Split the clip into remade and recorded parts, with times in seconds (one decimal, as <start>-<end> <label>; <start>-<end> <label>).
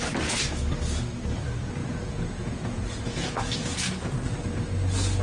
0.0-1.8 recorded; 1.8-4.3 remade; 4.3-5.2 recorded